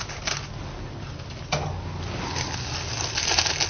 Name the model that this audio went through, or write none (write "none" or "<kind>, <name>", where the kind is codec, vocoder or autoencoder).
none